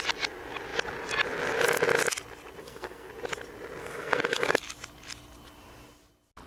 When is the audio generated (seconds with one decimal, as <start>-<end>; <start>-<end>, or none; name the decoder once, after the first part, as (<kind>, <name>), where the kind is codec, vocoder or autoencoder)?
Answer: 2.6-3.1 (codec, SNAC); 3.8-4.6